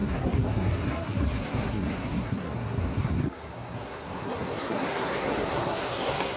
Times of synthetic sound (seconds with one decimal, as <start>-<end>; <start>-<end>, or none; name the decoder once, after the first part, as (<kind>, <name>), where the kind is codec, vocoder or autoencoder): 0.0-6.4 (codec, SNAC)